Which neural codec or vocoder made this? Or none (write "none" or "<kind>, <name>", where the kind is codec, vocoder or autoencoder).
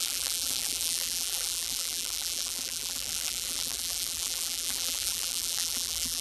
vocoder, BigVGAN v2